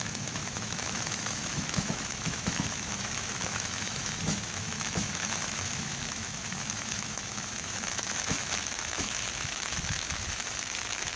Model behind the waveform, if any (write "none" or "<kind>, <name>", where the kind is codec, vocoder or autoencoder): autoencoder, DAC-VAE